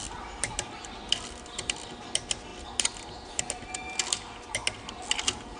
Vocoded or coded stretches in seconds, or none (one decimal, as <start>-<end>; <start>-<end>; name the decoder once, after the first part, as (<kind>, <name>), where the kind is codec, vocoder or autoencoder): none